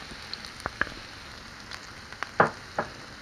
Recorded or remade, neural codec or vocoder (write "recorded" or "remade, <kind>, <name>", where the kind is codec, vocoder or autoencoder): recorded